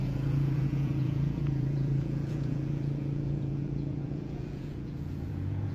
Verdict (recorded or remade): remade